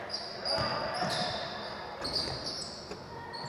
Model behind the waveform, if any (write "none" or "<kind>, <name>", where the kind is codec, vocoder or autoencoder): none